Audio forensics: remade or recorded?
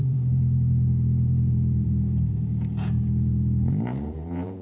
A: remade